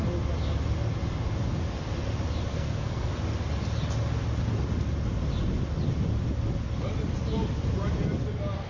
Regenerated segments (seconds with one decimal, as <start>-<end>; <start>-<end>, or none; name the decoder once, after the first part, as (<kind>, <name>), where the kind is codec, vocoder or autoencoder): 2.5-3.1 (codec, SNAC)